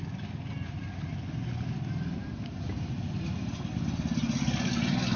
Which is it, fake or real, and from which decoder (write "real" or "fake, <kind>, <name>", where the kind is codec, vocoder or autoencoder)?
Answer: real